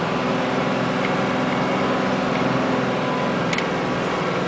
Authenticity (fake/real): real